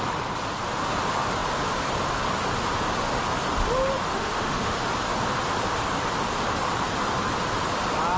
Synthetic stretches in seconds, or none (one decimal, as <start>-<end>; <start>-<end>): 4.1-4.9